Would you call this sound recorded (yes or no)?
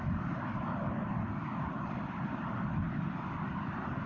yes